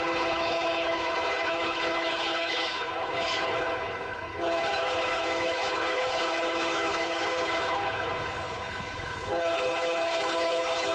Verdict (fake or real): fake